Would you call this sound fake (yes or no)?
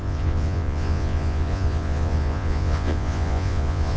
yes